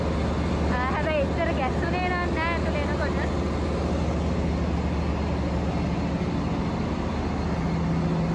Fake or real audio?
real